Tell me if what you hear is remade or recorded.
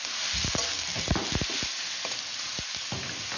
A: recorded